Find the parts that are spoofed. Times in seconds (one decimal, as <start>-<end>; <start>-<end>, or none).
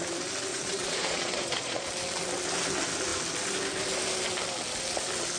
0.5-1.9